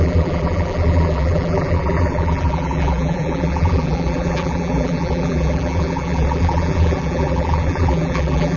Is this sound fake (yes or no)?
yes